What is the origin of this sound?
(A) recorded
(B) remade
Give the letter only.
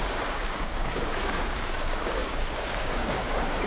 B